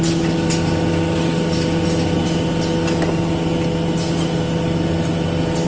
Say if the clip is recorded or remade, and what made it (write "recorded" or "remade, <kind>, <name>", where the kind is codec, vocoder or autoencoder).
recorded